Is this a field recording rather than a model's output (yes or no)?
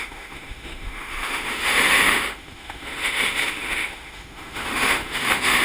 no